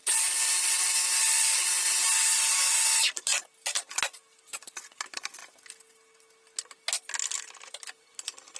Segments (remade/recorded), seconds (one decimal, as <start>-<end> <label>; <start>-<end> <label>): 0.0-8.6 recorded